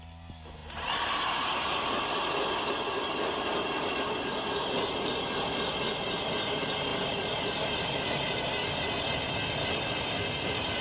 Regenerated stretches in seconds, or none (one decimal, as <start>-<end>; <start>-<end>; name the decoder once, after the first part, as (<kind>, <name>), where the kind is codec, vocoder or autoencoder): none